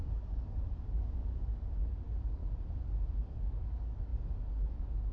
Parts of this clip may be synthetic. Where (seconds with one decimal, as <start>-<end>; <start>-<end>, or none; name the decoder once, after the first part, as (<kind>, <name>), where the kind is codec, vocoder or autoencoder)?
0.0-1.2 (codec, DAC); 1.8-2.4; 3.3-5.1